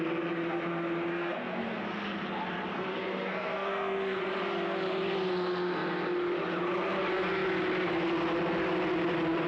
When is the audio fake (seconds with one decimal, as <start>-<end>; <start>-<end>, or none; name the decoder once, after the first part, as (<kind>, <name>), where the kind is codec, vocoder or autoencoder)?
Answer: 1.1-1.8 (codec, SNAC); 2.7-4.2